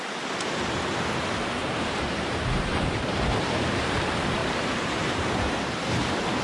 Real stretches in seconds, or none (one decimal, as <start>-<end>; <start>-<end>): 0.0-1.6; 4.0-4.4